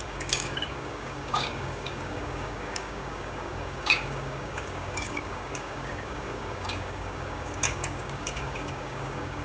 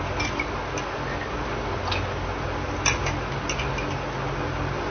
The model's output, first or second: first